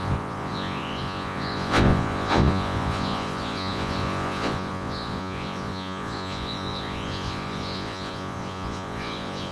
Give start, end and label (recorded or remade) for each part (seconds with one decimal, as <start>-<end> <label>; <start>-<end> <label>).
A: 0.0-9.5 remade